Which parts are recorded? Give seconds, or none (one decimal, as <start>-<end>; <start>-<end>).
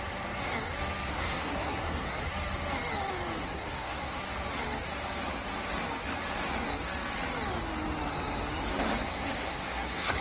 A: 0.0-1.1; 2.2-3.4; 4.2-9.1